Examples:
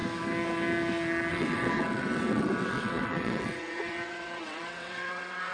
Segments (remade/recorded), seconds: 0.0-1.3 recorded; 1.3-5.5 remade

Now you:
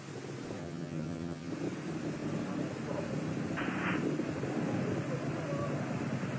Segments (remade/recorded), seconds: 0.0-0.6 recorded; 0.6-1.5 remade; 1.5-6.4 recorded

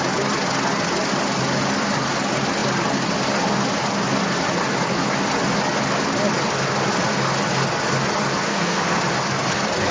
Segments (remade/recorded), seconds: 0.0-8.5 recorded; 8.5-9.0 remade; 9.0-9.9 recorded

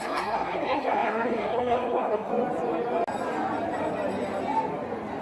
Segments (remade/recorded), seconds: 0.0-2.3 remade; 2.3-5.2 recorded